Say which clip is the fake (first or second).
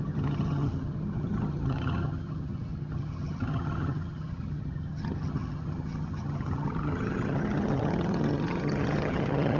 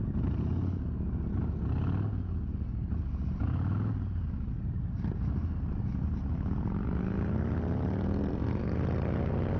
first